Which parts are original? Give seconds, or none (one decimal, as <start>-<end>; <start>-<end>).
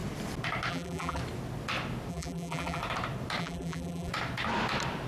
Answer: 0.0-0.7; 1.2-2.1; 2.8-3.4; 4.1-5.1